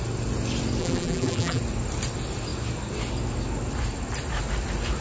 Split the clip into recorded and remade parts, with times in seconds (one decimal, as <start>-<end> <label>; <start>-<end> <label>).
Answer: 0.0-0.8 recorded; 0.8-1.6 remade; 1.6-5.0 recorded